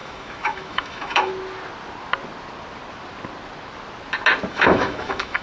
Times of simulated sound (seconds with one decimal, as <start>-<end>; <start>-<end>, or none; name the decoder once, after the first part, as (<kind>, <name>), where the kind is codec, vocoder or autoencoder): 0.0-1.3 (autoencoder, DAC-VAE); 4.5-5.4

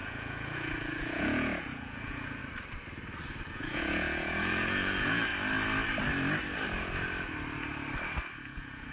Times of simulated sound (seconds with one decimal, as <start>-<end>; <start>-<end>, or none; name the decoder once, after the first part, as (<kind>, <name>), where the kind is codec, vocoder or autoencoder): 0.0-2.4 (vocoder, Vocos); 3.5-5.3; 8.4-8.9